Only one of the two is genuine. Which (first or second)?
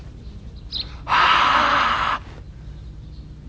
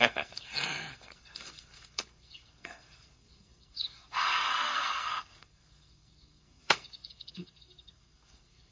first